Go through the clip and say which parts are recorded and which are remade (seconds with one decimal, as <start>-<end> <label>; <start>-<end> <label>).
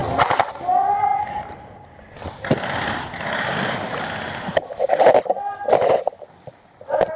0.0-7.2 recorded